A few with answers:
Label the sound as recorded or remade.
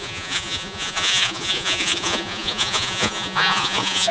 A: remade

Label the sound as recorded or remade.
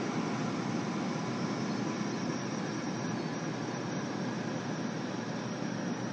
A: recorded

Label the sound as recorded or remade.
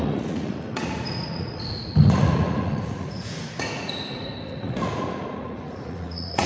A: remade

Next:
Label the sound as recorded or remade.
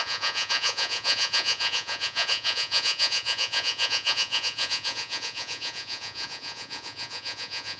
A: remade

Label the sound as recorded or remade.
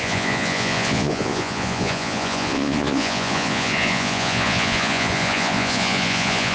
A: remade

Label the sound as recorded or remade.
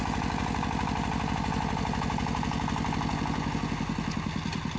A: recorded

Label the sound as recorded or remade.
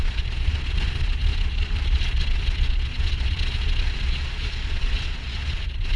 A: remade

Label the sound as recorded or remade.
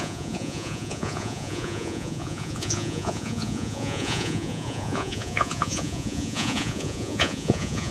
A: remade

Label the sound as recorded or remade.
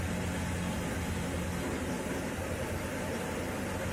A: recorded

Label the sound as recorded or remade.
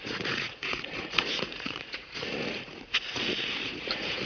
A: remade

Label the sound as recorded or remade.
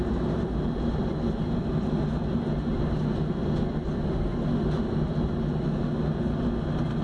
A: recorded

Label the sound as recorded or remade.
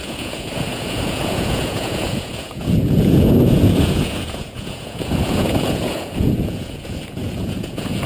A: remade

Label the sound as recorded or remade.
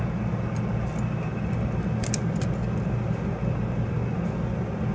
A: recorded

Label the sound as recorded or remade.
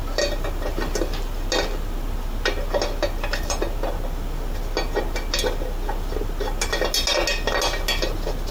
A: recorded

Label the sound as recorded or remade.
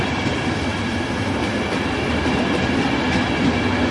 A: recorded